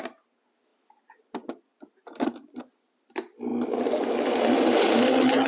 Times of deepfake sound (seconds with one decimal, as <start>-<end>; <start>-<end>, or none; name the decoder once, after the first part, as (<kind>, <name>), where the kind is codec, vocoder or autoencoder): none